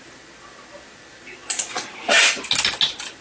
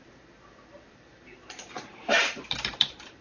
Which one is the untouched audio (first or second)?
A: first